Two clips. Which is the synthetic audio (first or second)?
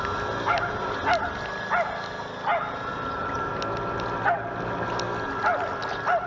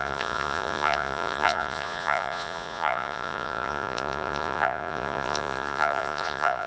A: second